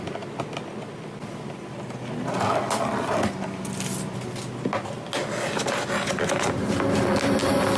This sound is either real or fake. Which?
real